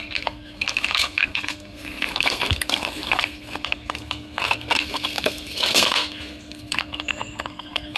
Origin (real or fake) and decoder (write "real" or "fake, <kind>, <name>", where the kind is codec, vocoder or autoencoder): fake, codec, SNAC